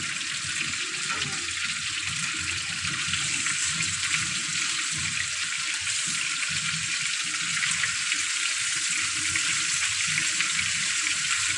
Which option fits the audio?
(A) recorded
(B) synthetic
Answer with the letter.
A